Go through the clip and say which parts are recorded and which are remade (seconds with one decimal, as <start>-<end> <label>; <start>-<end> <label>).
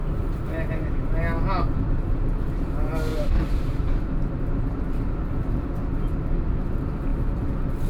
0.0-1.2 remade; 1.2-3.1 recorded; 3.1-4.4 remade; 4.4-7.9 recorded